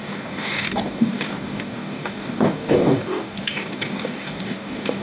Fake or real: fake